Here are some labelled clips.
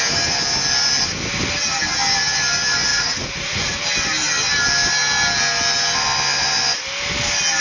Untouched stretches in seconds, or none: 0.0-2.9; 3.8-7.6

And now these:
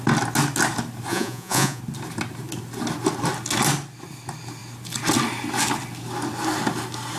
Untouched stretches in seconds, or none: 0.0-1.1; 1.8-7.2

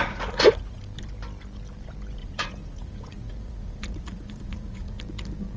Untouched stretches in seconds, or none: 0.8-2.2; 5.0-5.6

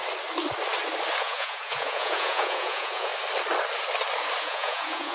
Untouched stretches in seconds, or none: 0.0-1.2; 3.1-4.4

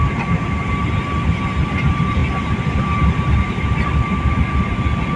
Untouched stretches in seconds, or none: 0.0-5.2